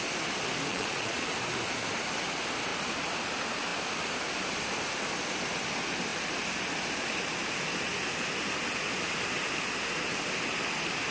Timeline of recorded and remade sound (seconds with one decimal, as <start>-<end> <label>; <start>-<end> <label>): 0.0-0.7 recorded; 0.7-1.3 remade; 1.3-11.1 recorded